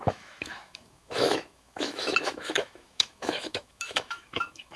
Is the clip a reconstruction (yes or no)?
yes